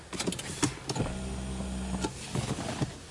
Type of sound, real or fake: real